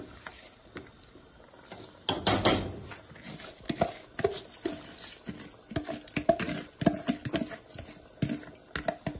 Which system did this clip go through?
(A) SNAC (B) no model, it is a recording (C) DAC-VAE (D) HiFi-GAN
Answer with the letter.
B